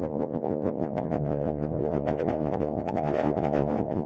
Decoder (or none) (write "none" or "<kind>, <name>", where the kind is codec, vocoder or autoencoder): vocoder, Vocos